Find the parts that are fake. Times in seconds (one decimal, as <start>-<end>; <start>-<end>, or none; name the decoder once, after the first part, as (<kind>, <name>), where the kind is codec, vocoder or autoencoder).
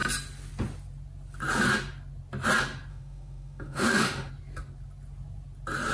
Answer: 2.9-4.3 (autoencoder, DAC-VAE)